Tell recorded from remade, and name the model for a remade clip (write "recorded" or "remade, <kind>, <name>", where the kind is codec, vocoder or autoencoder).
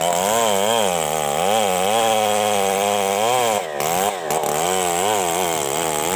recorded